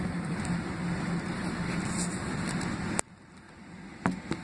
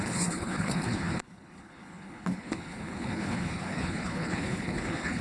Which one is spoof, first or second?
second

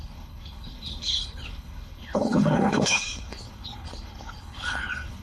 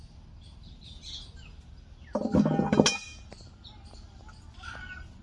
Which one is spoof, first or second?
first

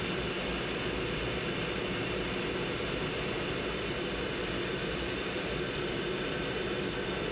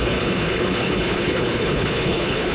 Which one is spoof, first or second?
second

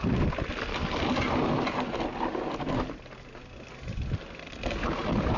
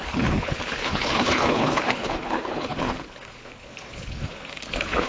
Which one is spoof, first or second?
second